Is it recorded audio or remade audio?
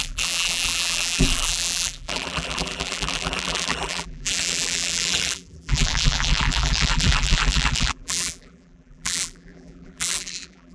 remade